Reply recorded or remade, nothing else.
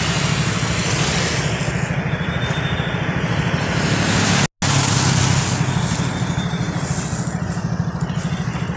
recorded